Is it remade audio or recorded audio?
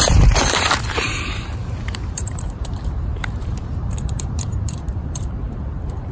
remade